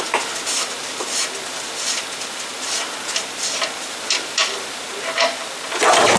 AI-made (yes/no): no